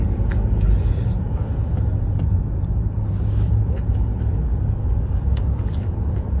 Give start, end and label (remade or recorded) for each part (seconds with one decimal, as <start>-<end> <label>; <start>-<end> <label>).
0.0-4.8 recorded; 4.8-5.9 remade; 5.9-6.4 recorded

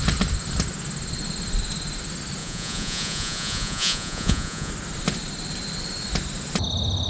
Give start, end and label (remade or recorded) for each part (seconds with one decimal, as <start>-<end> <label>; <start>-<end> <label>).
0.0-2.4 recorded; 2.4-4.7 remade; 4.7-7.1 recorded

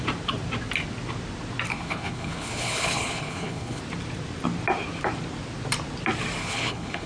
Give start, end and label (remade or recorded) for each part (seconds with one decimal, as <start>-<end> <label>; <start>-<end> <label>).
0.0-1.7 recorded; 1.7-3.8 remade; 3.8-6.4 recorded; 6.4-7.1 remade

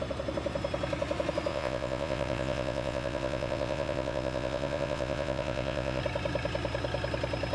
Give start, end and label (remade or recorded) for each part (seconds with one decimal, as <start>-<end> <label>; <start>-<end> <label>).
0.0-1.5 recorded; 1.5-6.0 remade; 6.0-7.5 recorded

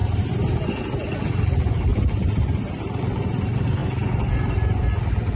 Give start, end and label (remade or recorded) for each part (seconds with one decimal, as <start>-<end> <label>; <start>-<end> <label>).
0.0-1.9 recorded; 1.9-3.0 remade; 3.0-3.8 recorded; 3.8-4.8 remade; 4.8-5.4 recorded

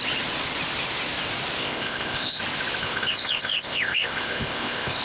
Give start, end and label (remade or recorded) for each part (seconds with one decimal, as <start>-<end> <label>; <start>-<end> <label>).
0.0-1.6 recorded; 1.6-2.4 remade; 2.4-2.8 recorded; 2.8-5.0 remade

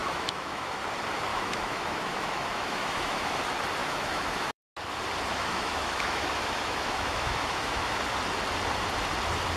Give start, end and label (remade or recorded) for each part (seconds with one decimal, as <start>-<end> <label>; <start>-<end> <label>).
0.0-0.7 remade; 0.7-1.3 recorded; 1.3-3.4 remade; 3.4-3.8 recorded; 3.8-4.7 remade; 4.7-5.5 recorded; 5.5-8.0 remade; 8.0-9.6 recorded